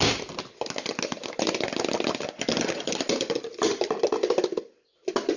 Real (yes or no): yes